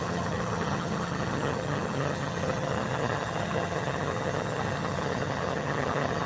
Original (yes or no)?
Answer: no